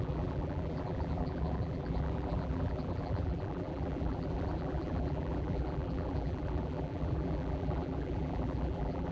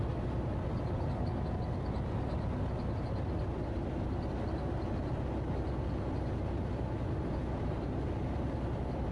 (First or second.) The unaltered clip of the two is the second